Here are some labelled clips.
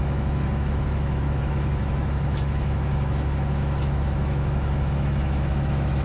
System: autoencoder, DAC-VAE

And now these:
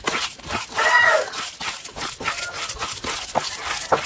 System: none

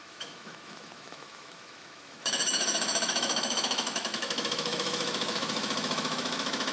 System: autoencoder, DAC-VAE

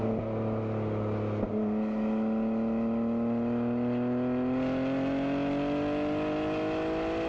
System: none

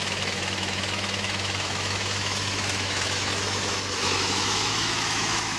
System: autoencoder, DAC-VAE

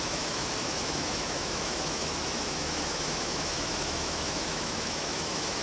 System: autoencoder, DAC-VAE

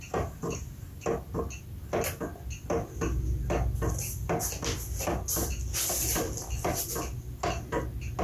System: none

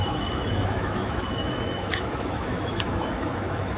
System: autoencoder, DAC-VAE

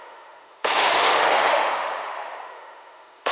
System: autoencoder, DAC-VAE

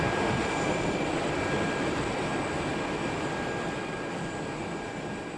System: none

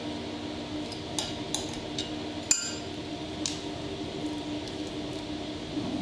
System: none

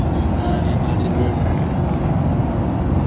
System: none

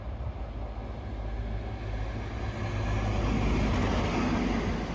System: none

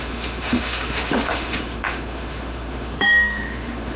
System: autoencoder, DAC-VAE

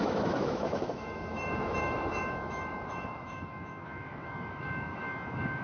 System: autoencoder, DAC-VAE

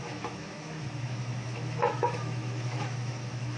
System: autoencoder, DAC-VAE